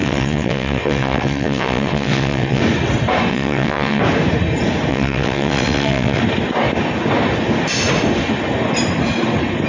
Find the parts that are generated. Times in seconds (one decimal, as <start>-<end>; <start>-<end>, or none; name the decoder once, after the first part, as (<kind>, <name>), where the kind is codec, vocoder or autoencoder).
0.0-2.6 (vocoder, WaveNeXt); 3.3-4.0; 4.9-6.2